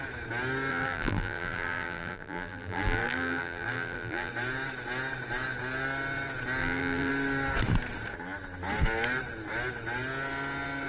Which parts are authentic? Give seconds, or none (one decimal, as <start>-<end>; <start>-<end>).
0.0-0.7; 4.3-6.6; 7.1-10.9